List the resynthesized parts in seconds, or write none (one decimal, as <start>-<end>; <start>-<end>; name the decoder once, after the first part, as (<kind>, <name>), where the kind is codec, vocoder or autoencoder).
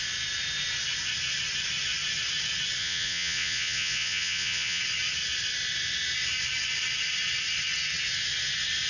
2.8-4.8 (vocoder, Vocos)